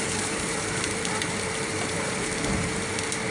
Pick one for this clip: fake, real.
fake